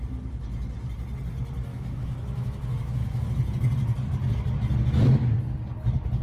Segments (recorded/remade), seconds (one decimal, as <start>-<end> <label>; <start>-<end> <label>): 0.0-1.7 recorded; 1.7-3.4 remade; 3.4-6.2 recorded

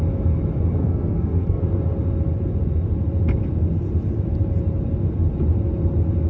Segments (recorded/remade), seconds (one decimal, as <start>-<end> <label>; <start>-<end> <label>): 0.0-0.8 recorded; 0.8-1.6 remade; 1.6-6.3 recorded

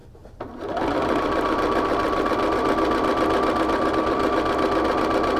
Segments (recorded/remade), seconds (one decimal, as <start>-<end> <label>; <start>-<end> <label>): 0.0-5.4 recorded

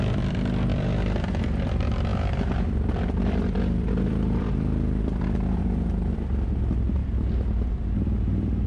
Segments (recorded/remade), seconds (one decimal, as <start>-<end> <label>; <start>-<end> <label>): 0.0-8.7 remade

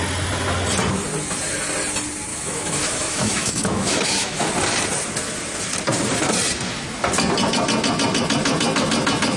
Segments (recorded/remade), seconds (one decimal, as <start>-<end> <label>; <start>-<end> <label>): 0.0-2.3 recorded; 2.3-4.5 remade; 4.5-9.4 recorded

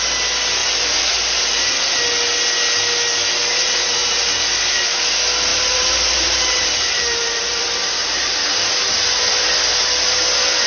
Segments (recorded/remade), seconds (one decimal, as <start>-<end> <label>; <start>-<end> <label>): 0.0-0.6 recorded; 0.6-2.0 remade; 2.0-5.5 recorded; 5.5-9.2 remade; 9.2-10.7 recorded

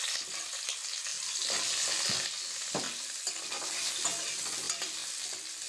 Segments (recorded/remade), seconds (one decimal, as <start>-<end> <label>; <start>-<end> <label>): 0.0-5.7 recorded

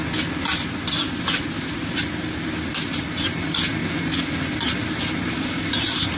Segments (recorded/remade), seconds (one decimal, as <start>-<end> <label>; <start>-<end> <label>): 0.0-6.2 recorded